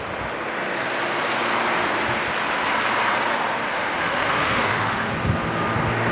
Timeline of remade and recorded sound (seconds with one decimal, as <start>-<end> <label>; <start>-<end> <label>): 0.0-3.7 recorded; 3.7-5.1 remade; 5.1-6.1 recorded